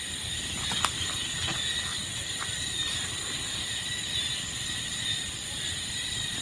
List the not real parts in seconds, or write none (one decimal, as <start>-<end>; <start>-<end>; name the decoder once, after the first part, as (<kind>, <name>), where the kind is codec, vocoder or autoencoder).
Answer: 1.9-5.7 (vocoder, BigVGAN v2)